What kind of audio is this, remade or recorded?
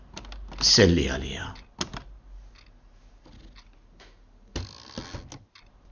recorded